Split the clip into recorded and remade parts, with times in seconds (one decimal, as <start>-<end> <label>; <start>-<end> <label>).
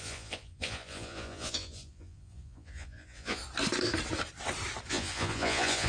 0.0-3.4 remade; 3.4-4.9 recorded; 4.9-5.9 remade